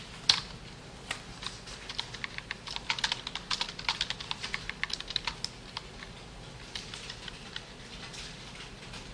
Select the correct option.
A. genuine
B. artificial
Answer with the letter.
A